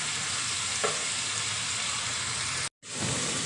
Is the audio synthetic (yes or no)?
no